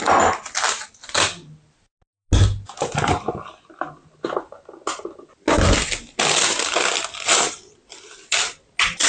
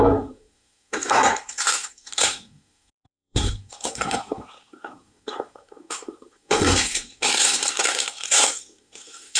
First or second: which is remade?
second